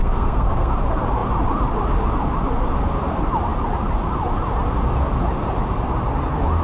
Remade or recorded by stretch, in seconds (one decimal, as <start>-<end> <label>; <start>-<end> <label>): 0.0-0.7 remade; 0.7-6.6 recorded